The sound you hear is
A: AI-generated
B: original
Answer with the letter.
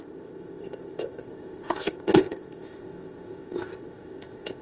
A